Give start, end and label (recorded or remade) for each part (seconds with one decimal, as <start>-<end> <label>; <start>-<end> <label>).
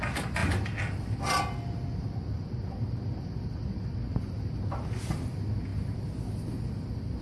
0.0-7.2 recorded